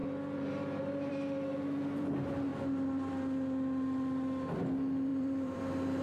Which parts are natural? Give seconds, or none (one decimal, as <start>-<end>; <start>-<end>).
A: 1.1-5.1; 5.6-6.0